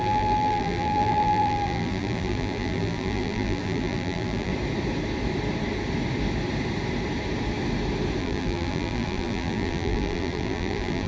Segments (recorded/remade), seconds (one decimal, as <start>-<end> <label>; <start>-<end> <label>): 0.0-4.5 remade; 4.5-8.2 recorded; 8.2-11.1 remade